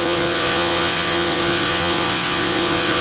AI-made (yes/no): yes